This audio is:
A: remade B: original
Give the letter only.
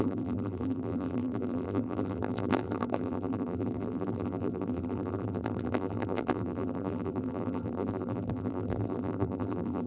A